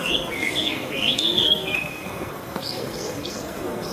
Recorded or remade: remade